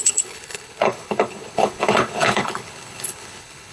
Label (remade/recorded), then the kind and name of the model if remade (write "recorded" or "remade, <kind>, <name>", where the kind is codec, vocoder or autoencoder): remade, codec, HILCodec